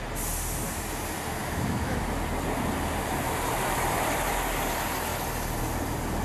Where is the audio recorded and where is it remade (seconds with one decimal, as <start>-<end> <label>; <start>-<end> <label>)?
0.0-1.4 recorded; 1.4-2.0 remade; 2.0-6.2 recorded